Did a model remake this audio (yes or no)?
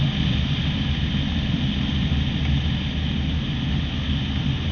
no